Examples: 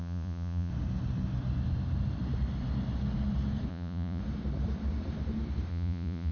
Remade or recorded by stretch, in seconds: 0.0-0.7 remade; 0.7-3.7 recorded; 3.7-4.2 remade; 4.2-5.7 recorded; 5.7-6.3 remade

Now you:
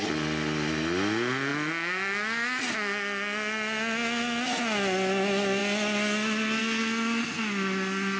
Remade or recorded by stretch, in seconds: 0.0-8.2 recorded

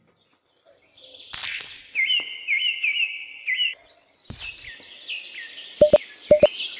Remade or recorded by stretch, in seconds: 0.0-6.8 recorded

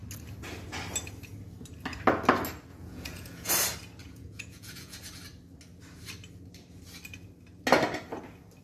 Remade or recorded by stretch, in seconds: 0.0-2.7 recorded; 2.7-3.5 remade; 3.5-4.0 recorded; 4.0-5.0 remade; 5.0-8.6 recorded

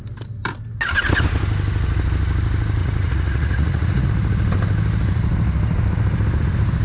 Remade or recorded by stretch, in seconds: 0.0-2.8 recorded; 2.8-4.1 remade; 4.1-6.8 recorded

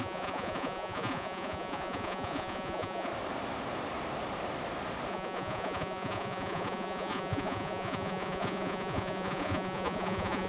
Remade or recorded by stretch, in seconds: 0.0-3.1 remade; 3.1-5.1 recorded; 5.1-10.5 remade

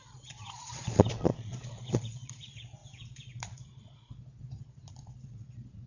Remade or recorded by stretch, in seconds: 0.0-5.9 remade

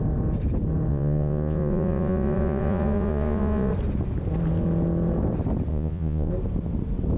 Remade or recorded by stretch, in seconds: 0.0-0.9 recorded; 0.9-3.7 remade; 3.7-5.7 recorded; 5.7-6.3 remade; 6.3-7.2 recorded